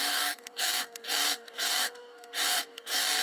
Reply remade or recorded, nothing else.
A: remade